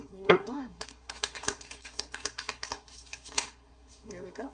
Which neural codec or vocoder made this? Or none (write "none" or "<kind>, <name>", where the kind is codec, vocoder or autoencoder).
codec, SNAC